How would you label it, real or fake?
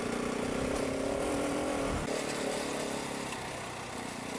real